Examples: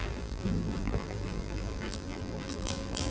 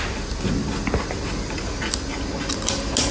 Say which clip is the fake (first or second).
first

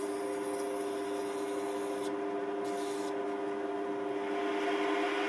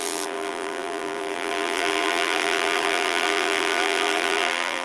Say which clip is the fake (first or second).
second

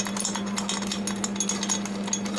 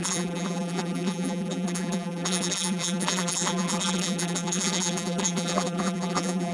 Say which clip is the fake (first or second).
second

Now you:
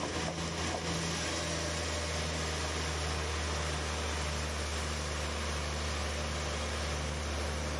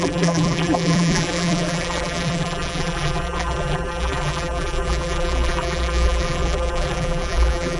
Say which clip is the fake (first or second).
second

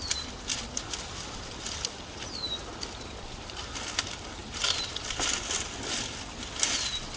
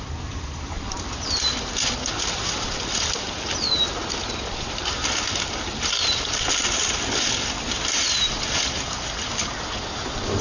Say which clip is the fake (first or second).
first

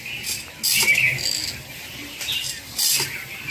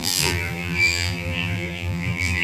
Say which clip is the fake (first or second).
second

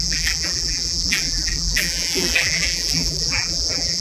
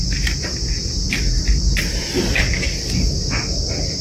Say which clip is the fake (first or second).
first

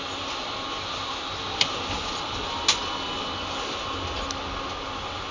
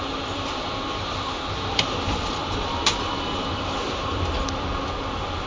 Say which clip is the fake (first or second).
second